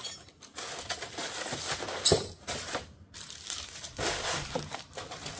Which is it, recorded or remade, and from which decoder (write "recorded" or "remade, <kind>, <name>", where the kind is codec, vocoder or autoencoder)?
recorded